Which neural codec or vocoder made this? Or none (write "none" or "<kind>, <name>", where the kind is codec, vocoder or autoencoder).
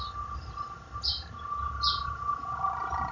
none